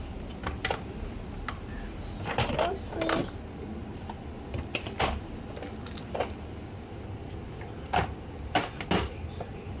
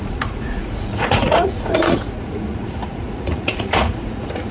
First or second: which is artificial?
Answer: second